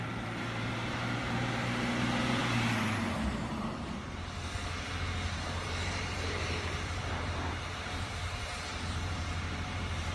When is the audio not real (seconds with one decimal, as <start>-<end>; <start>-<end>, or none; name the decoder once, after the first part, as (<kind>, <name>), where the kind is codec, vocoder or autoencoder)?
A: 0.0-2.4 (vocoder, BigVGAN v2); 3.4-4.6; 5.4-10.1